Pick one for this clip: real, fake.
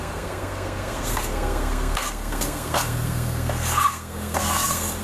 fake